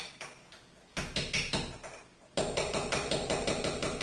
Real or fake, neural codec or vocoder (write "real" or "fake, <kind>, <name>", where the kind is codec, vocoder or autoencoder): real